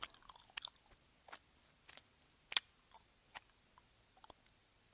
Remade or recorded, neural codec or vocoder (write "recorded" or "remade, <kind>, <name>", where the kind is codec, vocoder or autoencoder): recorded